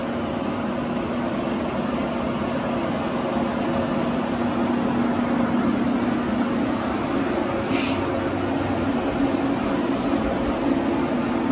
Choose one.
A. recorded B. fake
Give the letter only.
A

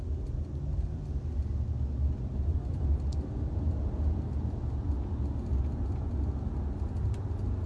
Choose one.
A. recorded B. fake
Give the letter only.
A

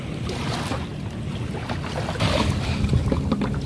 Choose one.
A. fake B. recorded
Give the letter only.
B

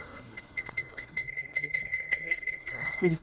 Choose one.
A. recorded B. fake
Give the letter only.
B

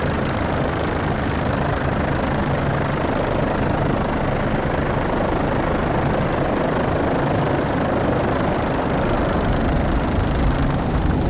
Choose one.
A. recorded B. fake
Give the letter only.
A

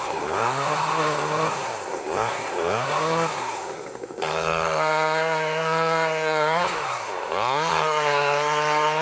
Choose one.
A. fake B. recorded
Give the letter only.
A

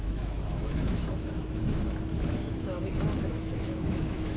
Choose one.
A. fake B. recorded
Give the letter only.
A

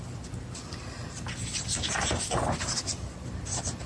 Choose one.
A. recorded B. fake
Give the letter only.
A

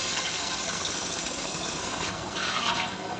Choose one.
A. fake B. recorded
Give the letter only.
A